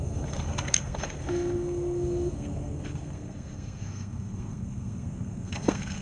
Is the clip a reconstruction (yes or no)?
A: yes